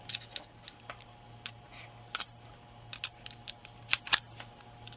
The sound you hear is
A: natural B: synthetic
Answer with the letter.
A